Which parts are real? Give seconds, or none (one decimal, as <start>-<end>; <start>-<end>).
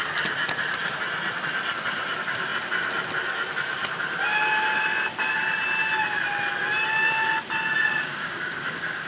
0.0-8.1